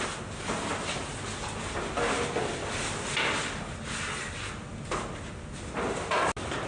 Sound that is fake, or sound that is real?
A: real